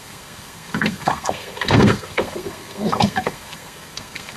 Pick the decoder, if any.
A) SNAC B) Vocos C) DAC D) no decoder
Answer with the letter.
A